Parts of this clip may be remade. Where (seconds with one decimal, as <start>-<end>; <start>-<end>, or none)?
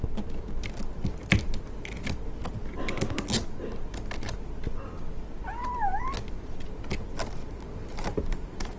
7.4-8.8